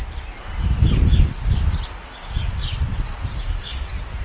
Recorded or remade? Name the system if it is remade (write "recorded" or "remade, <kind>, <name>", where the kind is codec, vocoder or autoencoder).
recorded